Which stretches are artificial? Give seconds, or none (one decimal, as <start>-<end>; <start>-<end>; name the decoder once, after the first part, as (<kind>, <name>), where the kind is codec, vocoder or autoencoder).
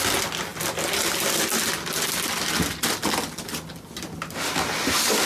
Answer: none